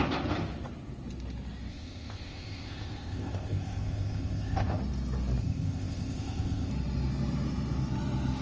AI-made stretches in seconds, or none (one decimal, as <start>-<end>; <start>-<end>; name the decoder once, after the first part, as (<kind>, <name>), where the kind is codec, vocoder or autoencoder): 1.7-4.8 (codec, ZipCodec); 5.4-6.7